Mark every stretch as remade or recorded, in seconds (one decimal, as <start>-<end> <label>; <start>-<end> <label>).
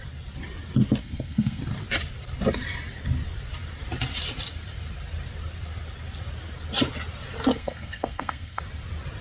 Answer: 0.0-1.0 recorded; 1.0-1.6 remade; 1.6-7.5 recorded; 7.5-8.6 remade; 8.6-9.2 recorded